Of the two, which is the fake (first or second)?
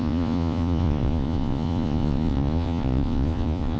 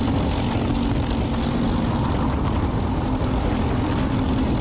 first